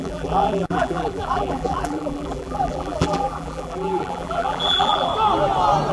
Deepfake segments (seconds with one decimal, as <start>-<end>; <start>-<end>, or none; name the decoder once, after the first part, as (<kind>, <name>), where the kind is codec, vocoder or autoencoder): 0.0-5.1 (vocoder, BigVGAN v2)